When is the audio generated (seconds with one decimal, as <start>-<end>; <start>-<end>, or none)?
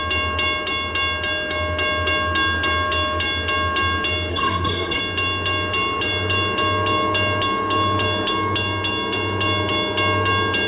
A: 4.3-5.0